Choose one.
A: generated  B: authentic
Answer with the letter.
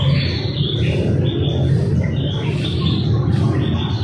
B